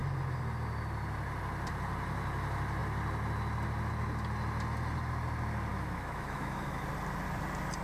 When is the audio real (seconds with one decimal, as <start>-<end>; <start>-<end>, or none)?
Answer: 0.0-5.7; 6.8-7.8